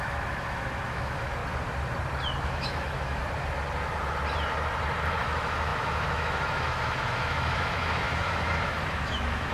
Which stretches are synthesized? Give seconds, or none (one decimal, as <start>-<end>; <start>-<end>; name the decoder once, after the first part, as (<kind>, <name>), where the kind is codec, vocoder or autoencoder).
0.0-1.4 (autoencoder, DAC-VAE); 2.4-3.2; 5.1-9.5